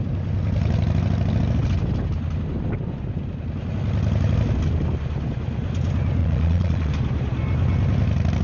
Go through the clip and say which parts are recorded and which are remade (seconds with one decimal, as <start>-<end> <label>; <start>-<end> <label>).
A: 0.0-6.2 recorded; 6.2-6.9 remade; 6.9-8.4 recorded